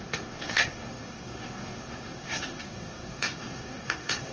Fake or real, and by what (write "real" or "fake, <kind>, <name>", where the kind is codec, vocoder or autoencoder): fake, codec, SNAC